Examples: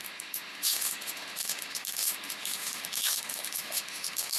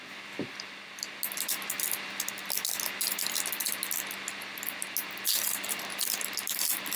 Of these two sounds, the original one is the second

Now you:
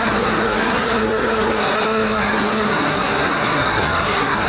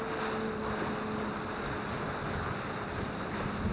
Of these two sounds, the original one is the second